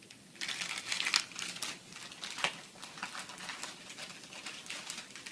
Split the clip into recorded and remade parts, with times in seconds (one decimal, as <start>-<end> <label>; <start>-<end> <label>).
0.0-5.3 recorded